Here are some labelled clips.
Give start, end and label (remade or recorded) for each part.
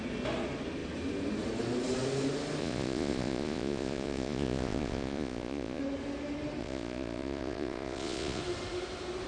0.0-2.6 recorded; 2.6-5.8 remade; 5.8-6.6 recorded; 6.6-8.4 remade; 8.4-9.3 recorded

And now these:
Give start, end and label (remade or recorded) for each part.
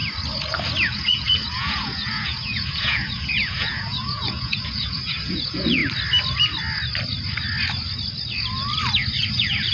0.0-0.9 recorded; 0.9-5.8 remade; 5.8-9.1 recorded; 9.1-9.7 remade